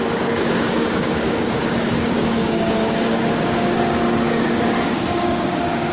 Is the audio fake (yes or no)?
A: yes